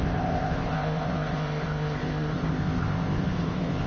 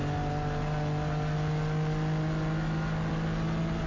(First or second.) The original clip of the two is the second